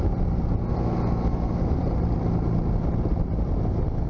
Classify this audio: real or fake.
real